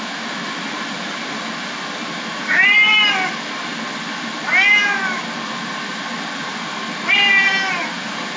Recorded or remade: recorded